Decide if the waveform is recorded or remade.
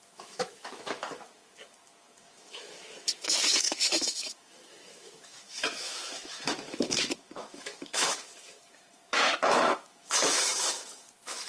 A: remade